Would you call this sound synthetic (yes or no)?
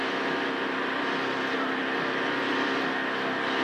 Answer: no